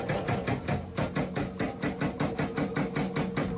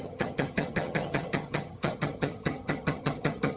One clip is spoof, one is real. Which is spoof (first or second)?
second